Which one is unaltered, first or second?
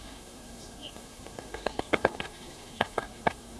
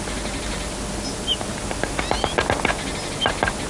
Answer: second